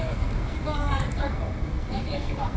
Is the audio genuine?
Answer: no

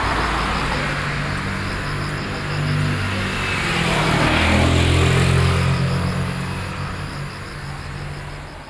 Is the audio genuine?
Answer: yes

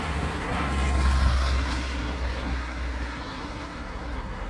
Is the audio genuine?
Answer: no